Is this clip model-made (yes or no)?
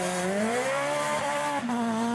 yes